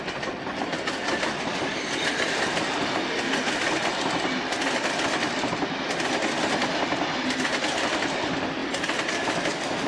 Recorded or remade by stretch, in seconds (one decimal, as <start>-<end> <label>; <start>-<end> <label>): 0.0-9.9 recorded